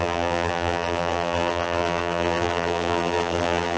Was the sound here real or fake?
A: fake